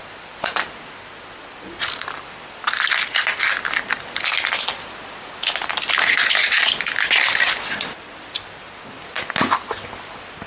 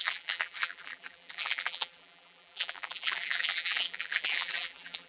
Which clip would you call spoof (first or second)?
second